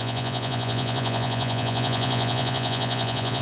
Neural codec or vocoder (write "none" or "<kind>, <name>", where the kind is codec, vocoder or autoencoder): vocoder, Vocos